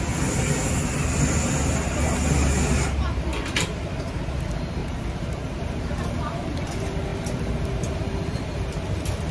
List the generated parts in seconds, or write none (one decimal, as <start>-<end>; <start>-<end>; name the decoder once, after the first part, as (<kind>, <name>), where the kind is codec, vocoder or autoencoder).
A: none

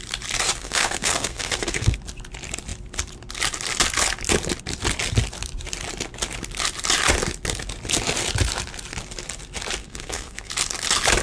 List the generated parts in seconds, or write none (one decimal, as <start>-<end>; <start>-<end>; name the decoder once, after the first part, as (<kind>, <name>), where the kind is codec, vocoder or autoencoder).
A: 0.6-2.0 (codec, SNAC); 9.8-10.5

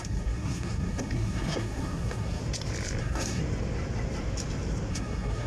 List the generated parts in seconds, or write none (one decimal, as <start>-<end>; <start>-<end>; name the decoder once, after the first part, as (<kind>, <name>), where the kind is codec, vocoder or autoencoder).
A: 0.0-2.4 (codec, SNAC); 3.0-3.4; 4.9-5.5